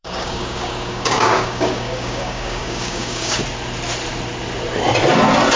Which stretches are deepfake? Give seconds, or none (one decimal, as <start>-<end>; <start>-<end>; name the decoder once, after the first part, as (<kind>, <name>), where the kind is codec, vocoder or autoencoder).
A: 0.0-3.4 (codec, DAC)